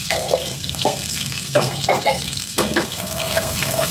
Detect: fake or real fake